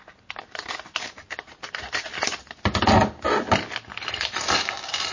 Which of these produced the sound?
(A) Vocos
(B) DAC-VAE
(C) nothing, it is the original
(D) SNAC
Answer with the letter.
C